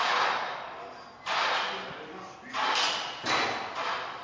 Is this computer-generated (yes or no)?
no